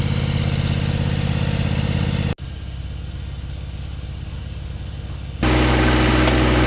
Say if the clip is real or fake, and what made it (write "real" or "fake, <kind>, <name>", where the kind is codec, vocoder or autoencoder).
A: real